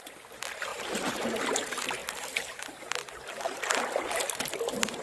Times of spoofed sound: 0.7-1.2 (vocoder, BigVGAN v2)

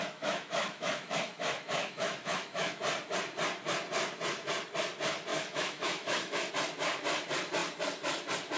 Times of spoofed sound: 0.0-2.8 (autoencoder, DAC-VAE); 5.3-6.5

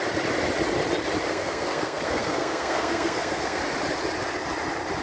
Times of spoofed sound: 1.3-3.6 (codec, SNAC)

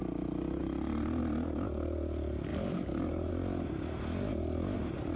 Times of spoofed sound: 0.6-1.2 (vocoder, BigVGAN v2); 2.5-3.3

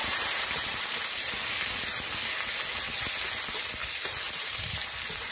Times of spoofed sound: 0.0-1.3 (vocoder, BigVGAN v2); 3.8-5.3

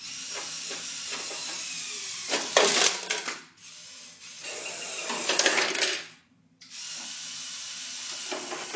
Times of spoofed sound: 1.4-2.8 (vocoder, BigVGAN v2)

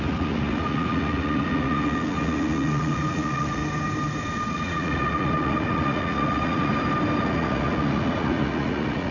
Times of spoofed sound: 0.0-3.6 (vocoder, Vocos); 4.5-6.7; 7.2-9.1